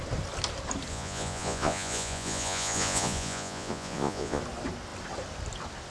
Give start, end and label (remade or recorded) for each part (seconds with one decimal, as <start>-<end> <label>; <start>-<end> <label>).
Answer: 0.0-0.9 recorded; 0.9-4.4 remade; 4.4-5.9 recorded